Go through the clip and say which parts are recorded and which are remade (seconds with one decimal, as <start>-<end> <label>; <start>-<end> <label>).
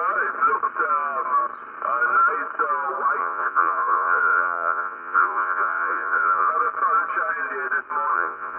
0.0-3.2 recorded; 3.2-6.5 remade; 6.5-8.1 recorded; 8.1-8.6 remade